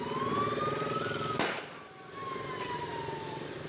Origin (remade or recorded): recorded